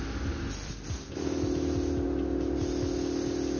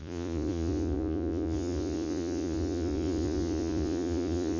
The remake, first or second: second